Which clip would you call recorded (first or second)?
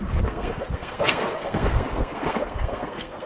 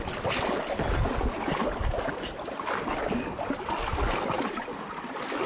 second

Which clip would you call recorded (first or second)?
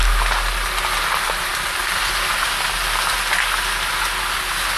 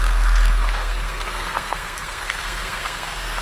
first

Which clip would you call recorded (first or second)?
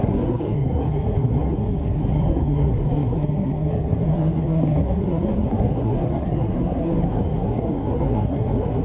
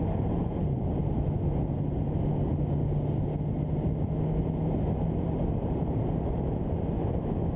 second